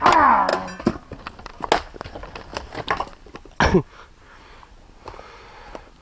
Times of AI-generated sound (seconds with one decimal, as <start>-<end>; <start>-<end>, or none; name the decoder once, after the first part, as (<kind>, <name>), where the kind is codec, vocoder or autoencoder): none